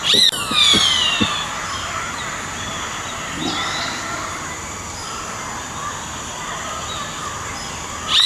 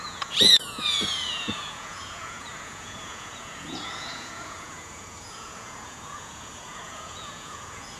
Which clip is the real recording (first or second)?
first